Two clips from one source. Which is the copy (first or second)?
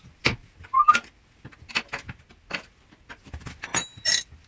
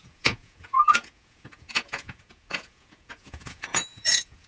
second